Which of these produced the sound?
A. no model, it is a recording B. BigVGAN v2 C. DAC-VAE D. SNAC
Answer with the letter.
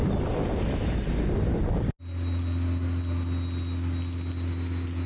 A